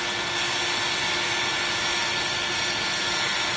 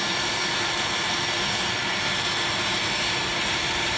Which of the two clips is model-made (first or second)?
second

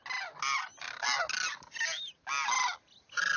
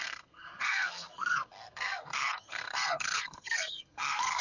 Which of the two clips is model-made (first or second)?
second